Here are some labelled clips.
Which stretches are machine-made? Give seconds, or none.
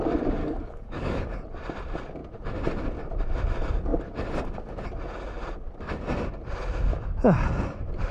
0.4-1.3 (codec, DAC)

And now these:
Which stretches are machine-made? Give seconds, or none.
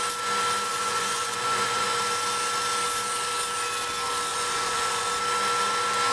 0.7-2.0 (vocoder, Vocos); 4.3-5.1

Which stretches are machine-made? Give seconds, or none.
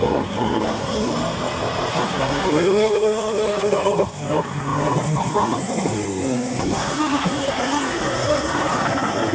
0.0-1.1 (codec, SNAC); 1.9-9.3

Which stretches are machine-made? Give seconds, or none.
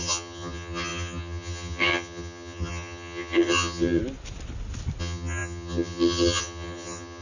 0.0-4.0 (vocoder, HiFi-GAN); 5.0-7.2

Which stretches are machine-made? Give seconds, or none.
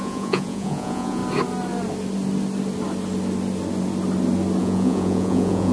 0.0-1.2 (vocoder, Vocos); 4.6-5.7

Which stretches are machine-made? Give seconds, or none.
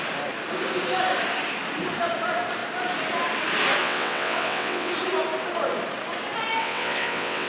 3.8-4.9 (vocoder, WaveNeXt); 6.6-7.5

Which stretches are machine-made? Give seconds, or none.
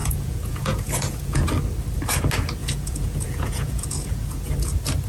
0.0-1.5 (vocoder, Vocos); 2.6-4.5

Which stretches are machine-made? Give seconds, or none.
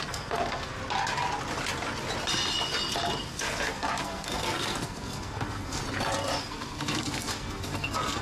0.0-0.7 (codec, SNAC); 3.3-5.8; 6.4-8.2